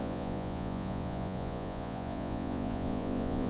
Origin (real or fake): fake